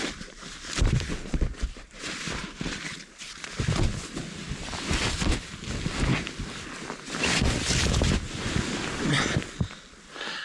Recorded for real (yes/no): yes